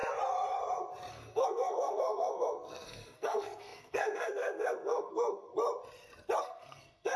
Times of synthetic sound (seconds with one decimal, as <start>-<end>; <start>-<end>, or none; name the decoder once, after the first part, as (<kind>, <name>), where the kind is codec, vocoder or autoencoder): 1.1-5.5 (codec, SNAC); 6.4-7.2